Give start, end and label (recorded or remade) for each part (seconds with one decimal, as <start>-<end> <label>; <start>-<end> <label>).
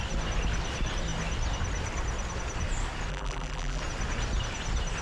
0.0-3.1 recorded; 3.1-3.8 remade; 3.8-5.0 recorded